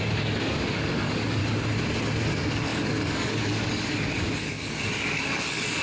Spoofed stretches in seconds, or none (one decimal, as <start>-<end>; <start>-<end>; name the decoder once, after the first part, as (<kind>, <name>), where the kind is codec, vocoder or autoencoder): 0.0-1.4 (codec, DAC); 2.2-5.8